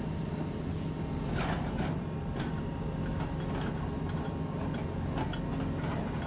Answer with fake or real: real